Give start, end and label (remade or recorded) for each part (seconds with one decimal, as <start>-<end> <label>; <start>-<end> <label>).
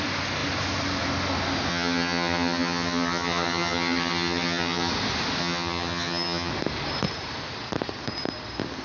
0.0-1.7 recorded; 1.7-4.9 remade; 4.9-5.4 recorded; 5.4-6.5 remade; 6.5-8.8 recorded